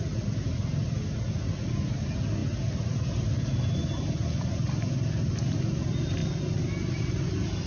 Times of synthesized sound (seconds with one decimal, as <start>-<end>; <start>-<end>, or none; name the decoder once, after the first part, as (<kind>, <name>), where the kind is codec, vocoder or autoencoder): none

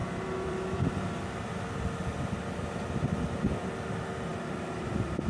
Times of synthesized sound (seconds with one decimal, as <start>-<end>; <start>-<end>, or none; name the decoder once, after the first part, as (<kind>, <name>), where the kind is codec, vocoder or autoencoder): 0.0-1.6 (vocoder, BigVGAN v2); 4.3-5.3